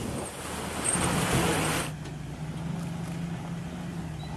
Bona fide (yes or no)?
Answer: yes